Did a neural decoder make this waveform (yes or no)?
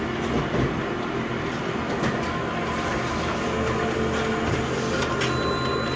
no